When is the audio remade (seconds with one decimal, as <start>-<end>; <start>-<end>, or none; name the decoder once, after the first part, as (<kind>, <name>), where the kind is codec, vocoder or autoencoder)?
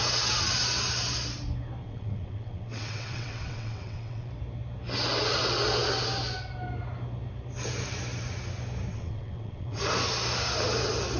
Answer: 1.8-4.3 (vocoder, WaveNeXt); 8.9-9.8